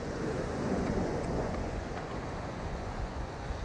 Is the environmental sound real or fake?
fake